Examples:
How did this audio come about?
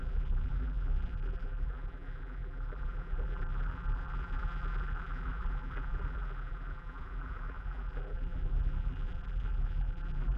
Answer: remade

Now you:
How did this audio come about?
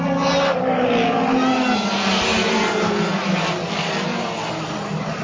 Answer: recorded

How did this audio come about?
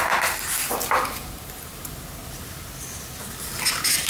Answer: recorded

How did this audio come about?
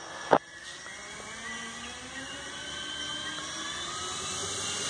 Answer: recorded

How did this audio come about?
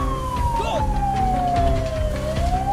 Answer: recorded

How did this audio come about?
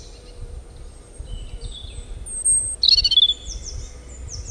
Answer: recorded